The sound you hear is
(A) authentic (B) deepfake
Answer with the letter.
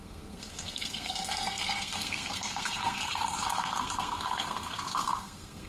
B